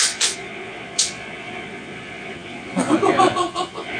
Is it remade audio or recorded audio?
remade